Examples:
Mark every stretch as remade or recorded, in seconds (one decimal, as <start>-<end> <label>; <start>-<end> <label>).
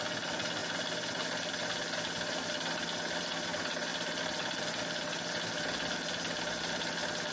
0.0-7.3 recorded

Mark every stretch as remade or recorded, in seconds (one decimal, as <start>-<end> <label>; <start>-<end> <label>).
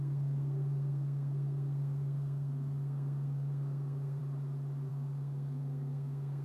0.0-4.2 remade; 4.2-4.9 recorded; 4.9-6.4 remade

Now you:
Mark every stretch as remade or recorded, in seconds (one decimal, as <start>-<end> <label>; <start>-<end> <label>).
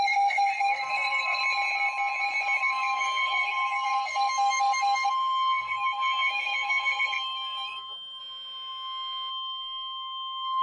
0.0-1.4 remade; 1.4-2.6 recorded; 2.6-8.2 remade; 8.2-9.3 recorded; 9.3-10.6 remade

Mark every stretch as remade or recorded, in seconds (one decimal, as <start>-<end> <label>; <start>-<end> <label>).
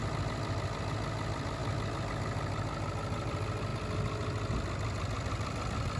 0.0-6.0 recorded